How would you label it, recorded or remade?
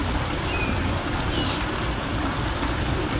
recorded